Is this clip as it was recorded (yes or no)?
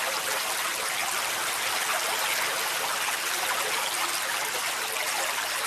yes